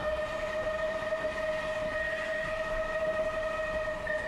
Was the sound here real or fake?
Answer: real